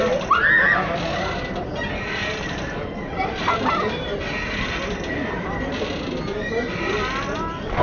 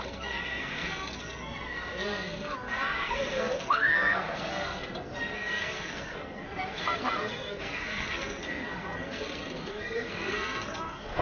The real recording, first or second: first